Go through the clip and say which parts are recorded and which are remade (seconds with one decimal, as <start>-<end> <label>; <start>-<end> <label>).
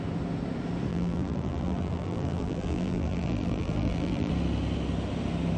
0.0-0.9 recorded; 0.9-4.3 remade; 4.3-5.6 recorded